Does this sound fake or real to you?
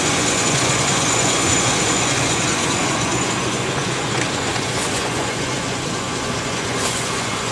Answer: fake